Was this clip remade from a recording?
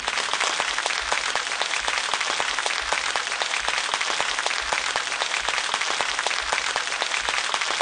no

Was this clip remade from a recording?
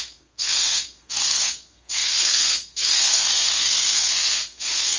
yes